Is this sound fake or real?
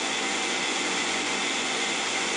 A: fake